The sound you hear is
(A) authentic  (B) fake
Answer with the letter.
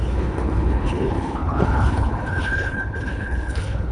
B